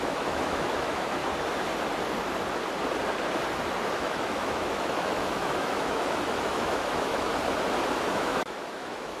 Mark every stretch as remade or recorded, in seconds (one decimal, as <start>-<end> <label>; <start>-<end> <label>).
0.0-1.2 remade; 1.2-3.9 recorded; 3.9-7.3 remade; 7.3-8.1 recorded; 8.1-9.2 remade